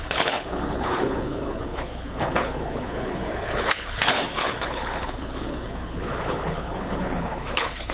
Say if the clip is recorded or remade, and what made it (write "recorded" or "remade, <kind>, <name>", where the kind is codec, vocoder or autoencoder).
remade, codec, HILCodec